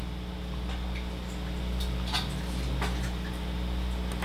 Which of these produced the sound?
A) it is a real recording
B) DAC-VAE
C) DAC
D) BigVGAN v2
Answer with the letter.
A